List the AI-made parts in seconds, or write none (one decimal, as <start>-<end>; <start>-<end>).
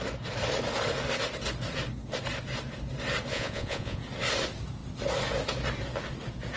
3.3-4.0